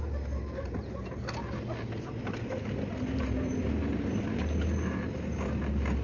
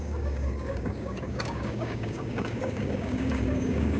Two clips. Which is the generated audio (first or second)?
second